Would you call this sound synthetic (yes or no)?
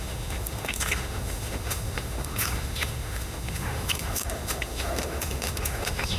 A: yes